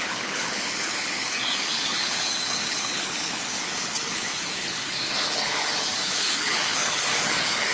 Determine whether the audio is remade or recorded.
remade